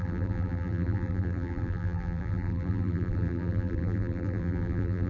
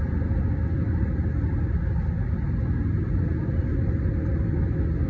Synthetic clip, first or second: first